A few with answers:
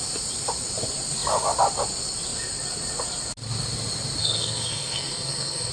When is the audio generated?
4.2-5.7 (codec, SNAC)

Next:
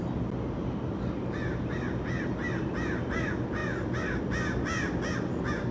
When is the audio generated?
none

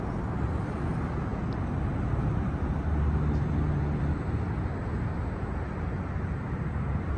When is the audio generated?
none

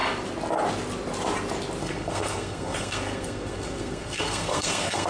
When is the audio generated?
1.8-5.1 (codec, SNAC)

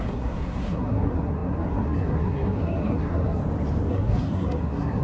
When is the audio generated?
0.0-3.4 (codec, SNAC); 3.9-5.0

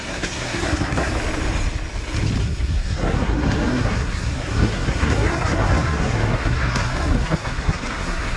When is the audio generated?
0.0-1.1 (codec, SNAC); 2.4-8.4